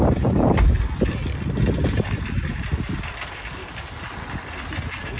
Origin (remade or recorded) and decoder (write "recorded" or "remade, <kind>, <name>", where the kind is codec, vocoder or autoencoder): recorded